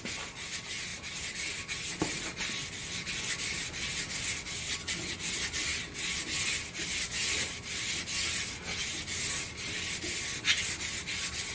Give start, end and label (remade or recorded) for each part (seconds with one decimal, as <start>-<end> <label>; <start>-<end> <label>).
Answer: 0.0-11.5 recorded

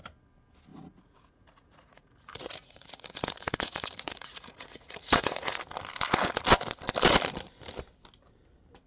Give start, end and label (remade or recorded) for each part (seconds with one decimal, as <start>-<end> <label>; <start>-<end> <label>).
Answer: 0.0-0.7 recorded; 0.7-5.6 remade; 5.6-8.9 recorded

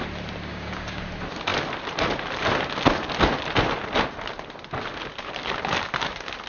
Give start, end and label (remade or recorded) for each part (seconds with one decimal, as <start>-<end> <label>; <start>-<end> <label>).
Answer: 0.0-0.5 recorded; 0.5-1.0 remade; 1.0-6.5 recorded

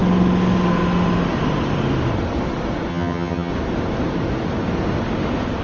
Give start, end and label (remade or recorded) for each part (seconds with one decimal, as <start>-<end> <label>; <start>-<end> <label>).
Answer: 0.0-2.9 recorded; 2.9-3.5 remade; 3.5-5.6 recorded

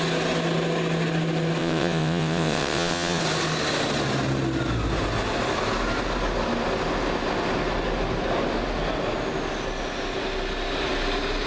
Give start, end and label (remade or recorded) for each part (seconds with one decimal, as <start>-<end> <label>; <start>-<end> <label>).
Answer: 0.0-1.6 recorded; 1.6-3.2 remade; 3.2-11.5 recorded

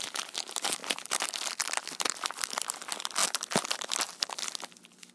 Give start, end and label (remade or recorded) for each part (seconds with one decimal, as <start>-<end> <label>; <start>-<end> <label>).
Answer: 0.0-5.1 remade

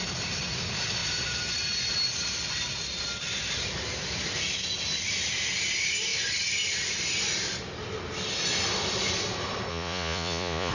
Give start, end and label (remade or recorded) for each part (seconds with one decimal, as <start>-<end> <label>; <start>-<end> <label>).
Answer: 0.0-9.7 recorded; 9.7-10.7 remade